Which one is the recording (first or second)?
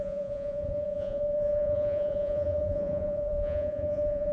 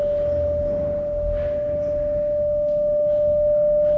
second